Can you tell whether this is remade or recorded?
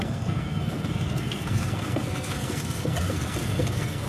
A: remade